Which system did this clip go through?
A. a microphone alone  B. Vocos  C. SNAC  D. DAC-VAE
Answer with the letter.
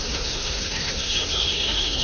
C